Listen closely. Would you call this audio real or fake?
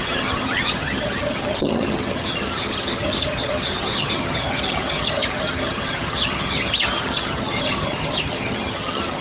fake